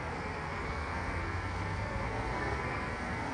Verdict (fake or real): fake